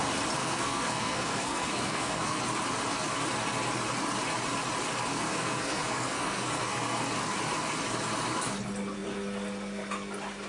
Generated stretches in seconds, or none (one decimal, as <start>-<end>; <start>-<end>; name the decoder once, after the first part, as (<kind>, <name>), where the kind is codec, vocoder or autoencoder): 0.4-2.4 (codec, SNAC); 5.1-7.0